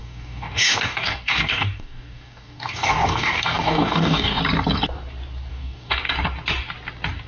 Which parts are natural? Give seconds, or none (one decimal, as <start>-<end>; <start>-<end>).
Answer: 4.4-5.5; 6.1-7.3